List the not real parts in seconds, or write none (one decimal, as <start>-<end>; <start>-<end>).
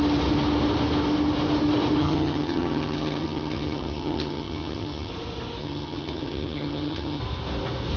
2.0-5.1; 5.6-7.2